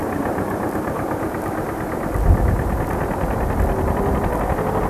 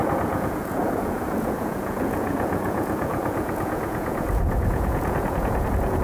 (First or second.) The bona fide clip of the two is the first